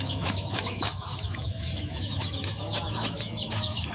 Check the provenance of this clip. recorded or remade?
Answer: remade